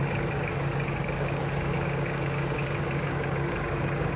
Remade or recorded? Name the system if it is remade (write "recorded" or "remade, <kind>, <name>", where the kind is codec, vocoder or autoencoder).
remade, codec, DAC